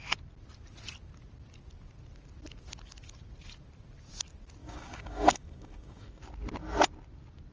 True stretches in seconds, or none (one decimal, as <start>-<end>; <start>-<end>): 0.0-4.6; 6.2-7.5